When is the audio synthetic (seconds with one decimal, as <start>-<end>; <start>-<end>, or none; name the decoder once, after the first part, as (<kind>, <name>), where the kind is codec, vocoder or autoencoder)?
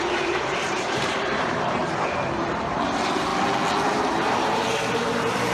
0.0-1.8 (vocoder, BigVGAN v2); 2.5-3.3; 3.9-5.5